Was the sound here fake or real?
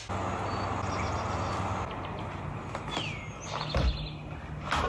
real